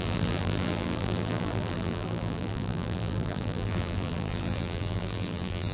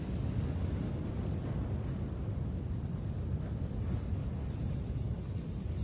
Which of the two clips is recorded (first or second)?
second